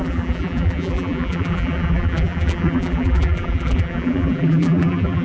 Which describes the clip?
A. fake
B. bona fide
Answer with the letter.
A